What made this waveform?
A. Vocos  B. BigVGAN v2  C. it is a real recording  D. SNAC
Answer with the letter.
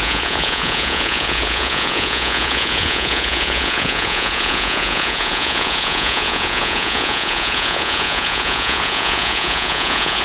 A